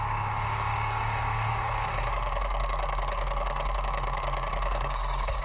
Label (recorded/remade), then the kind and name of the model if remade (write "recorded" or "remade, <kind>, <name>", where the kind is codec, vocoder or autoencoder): remade, codec, DAC